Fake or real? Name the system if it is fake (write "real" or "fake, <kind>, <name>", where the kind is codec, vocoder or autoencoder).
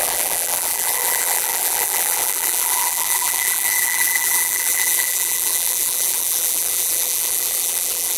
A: fake, vocoder, BigVGAN v2